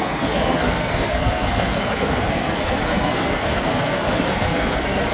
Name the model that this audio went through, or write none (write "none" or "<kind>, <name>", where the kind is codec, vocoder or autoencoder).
codec, SNAC